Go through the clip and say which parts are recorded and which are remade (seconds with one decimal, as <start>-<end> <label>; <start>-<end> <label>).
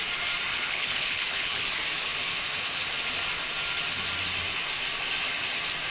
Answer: 0.0-0.5 recorded; 0.5-1.6 remade; 1.6-5.9 recorded